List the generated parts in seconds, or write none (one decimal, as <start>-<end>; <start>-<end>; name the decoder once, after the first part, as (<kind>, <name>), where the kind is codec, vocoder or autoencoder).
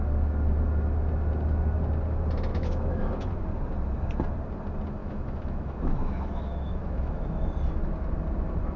2.5-3.4 (autoencoder, DAC-VAE); 5.0-7.5